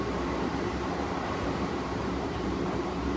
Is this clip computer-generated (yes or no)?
yes